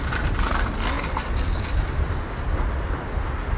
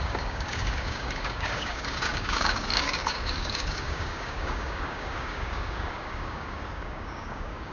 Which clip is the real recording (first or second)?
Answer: first